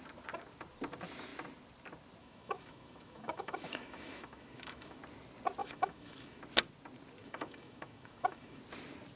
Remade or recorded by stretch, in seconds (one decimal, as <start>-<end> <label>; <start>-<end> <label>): 0.0-2.2 recorded; 2.2-5.0 remade; 5.0-5.6 recorded; 5.6-6.4 remade; 6.4-7.2 recorded; 7.2-8.6 remade; 8.6-9.2 recorded